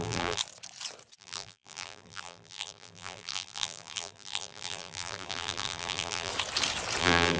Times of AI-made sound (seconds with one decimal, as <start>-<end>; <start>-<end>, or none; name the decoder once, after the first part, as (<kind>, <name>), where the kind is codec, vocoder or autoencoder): 0.0-0.4 (vocoder, BigVGAN v2); 1.2-6.3; 7.0-7.4